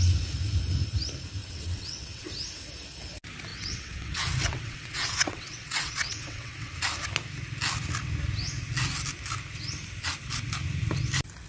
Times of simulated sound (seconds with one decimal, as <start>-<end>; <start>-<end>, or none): 1.4-2.3; 3.5-6.7